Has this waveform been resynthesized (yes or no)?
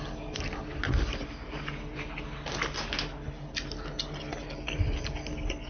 no